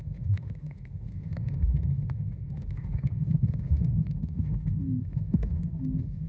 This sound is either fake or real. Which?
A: fake